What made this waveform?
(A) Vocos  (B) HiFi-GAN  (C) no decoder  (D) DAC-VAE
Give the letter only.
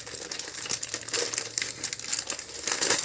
C